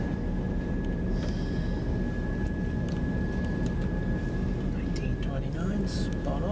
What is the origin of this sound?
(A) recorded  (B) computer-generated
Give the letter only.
A